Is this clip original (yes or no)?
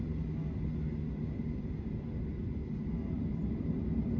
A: yes